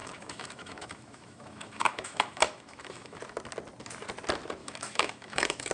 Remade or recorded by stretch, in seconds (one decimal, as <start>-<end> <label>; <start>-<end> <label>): 0.0-3.2 remade; 3.2-4.6 recorded; 4.6-5.7 remade